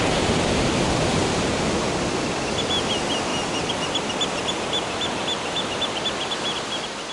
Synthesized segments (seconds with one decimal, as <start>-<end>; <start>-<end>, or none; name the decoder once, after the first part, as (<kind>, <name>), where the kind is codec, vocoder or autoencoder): none